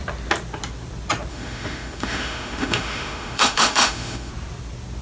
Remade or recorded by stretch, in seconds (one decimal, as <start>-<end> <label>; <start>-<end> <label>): 0.0-1.3 recorded; 1.3-4.3 remade; 4.3-5.0 recorded